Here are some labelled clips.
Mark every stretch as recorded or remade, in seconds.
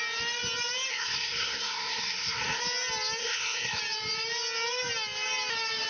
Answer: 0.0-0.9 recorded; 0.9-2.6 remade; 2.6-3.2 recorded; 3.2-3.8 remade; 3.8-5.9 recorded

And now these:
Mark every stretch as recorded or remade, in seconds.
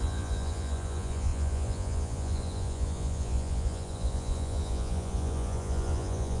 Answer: 0.0-6.4 remade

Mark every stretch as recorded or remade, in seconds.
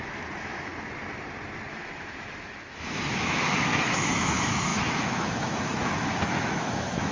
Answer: 0.0-0.7 remade; 0.7-1.7 recorded; 1.7-7.1 remade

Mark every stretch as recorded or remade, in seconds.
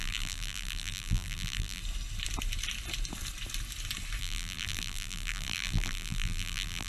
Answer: 0.0-1.8 remade; 1.8-4.2 recorded; 4.2-6.9 remade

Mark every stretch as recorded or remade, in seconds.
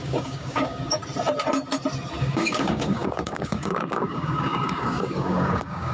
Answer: 0.0-1.0 remade; 1.0-2.2 recorded; 2.2-5.9 remade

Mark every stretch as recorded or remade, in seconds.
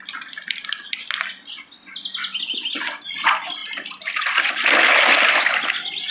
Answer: 0.0-6.1 recorded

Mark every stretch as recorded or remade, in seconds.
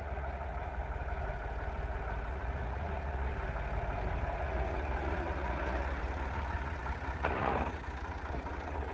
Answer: 0.0-0.8 remade; 0.8-2.3 recorded; 2.3-3.3 remade; 3.3-4.4 recorded; 4.4-8.9 remade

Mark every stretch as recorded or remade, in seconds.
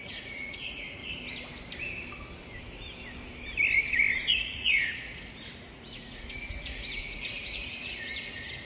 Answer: 0.0-1.0 remade; 1.0-4.3 recorded; 4.3-8.6 remade